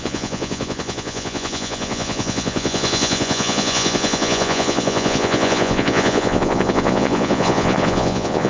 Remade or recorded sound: remade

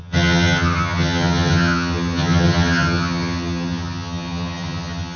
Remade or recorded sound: remade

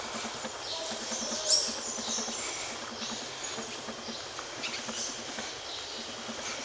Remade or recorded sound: recorded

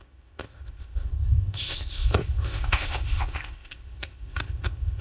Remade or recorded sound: remade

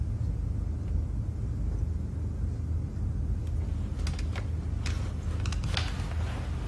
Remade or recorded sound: recorded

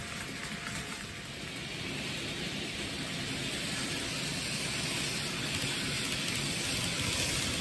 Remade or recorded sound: recorded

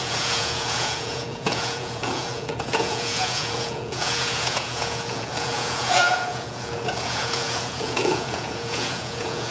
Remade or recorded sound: remade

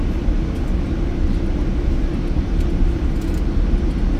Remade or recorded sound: recorded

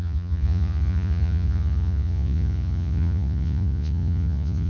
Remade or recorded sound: remade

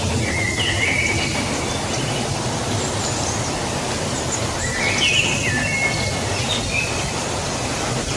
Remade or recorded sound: recorded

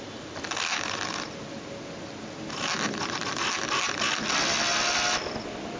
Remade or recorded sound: recorded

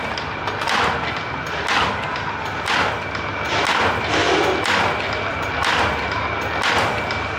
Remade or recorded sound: recorded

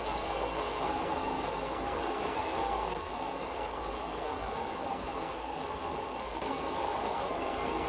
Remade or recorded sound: remade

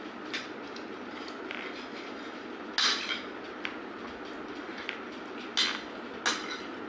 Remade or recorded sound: recorded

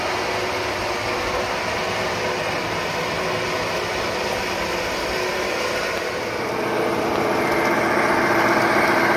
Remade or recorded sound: recorded